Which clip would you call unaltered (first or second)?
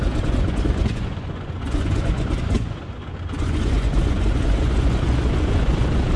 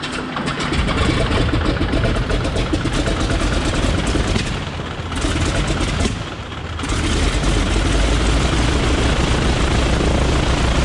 second